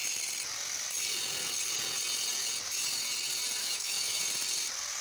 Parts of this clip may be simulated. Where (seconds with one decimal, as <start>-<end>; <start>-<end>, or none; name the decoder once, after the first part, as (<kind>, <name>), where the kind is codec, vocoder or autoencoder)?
3.6-4.2 (autoencoder, DAC-VAE)

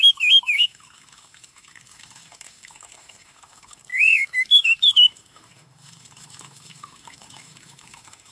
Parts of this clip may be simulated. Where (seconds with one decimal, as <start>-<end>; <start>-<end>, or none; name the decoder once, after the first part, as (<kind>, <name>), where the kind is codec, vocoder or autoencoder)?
0.0-8.3 (autoencoder, DAC-VAE)

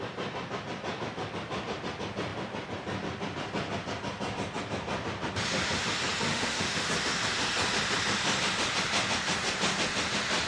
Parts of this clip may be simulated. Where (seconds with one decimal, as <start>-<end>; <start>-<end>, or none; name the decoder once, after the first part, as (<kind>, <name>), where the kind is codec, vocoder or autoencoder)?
6.3-6.9 (autoencoder, DAC-VAE)

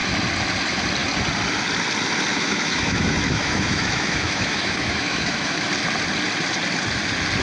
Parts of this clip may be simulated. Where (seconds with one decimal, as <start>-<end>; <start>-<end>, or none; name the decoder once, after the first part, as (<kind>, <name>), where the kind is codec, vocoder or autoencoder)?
2.3-5.7 (autoencoder, DAC-VAE)

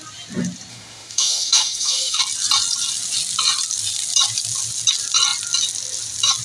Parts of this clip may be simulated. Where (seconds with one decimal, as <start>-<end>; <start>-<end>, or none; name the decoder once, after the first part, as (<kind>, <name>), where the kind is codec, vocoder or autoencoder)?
0.7-2.2 (autoencoder, DAC-VAE)

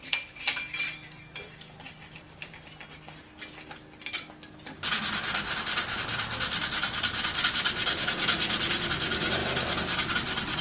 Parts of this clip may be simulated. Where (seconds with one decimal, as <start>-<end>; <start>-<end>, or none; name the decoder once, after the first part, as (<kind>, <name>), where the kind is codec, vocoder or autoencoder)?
none

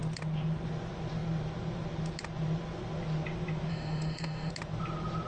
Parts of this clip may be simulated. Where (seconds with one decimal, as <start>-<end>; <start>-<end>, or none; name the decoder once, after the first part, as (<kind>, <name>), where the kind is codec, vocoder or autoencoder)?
3.7-4.5 (autoencoder, DAC-VAE)

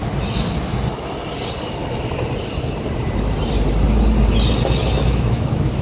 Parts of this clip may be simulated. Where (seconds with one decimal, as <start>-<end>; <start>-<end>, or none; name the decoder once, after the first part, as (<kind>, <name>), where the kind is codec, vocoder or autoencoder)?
4.8-5.8 (autoencoder, DAC-VAE)